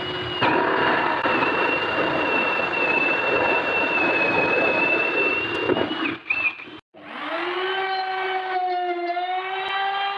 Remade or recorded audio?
recorded